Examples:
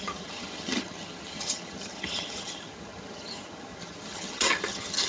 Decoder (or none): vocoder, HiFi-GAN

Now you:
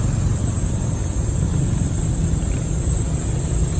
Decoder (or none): none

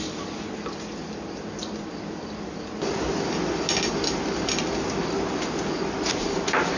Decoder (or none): none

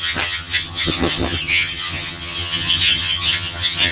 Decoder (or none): vocoder, HiFi-GAN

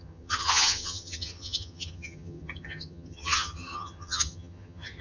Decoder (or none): vocoder, HiFi-GAN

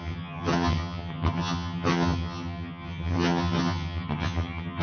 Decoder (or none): vocoder, HiFi-GAN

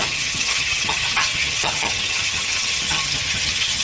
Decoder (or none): vocoder, HiFi-GAN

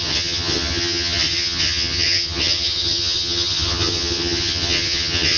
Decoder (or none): vocoder, HiFi-GAN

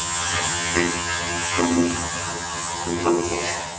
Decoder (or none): vocoder, HiFi-GAN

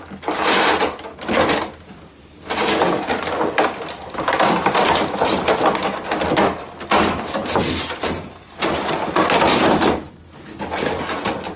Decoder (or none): none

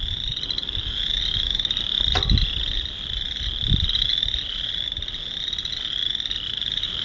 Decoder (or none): none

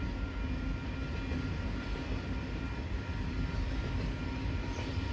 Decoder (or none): none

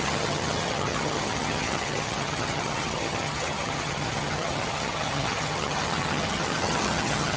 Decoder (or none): vocoder, HiFi-GAN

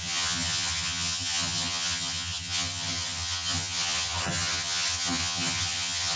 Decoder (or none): vocoder, HiFi-GAN